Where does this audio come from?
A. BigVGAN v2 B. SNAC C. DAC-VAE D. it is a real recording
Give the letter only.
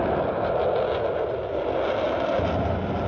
D